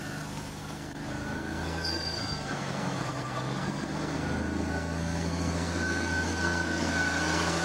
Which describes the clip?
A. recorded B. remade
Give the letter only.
B